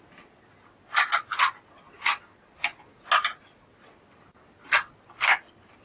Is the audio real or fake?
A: real